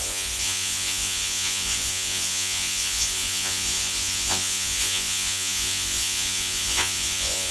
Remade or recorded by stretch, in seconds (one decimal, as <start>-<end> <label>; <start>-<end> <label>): 0.0-7.5 remade